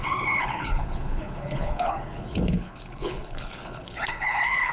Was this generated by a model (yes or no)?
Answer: yes